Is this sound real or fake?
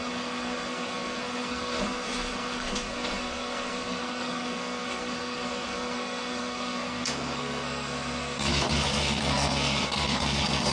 fake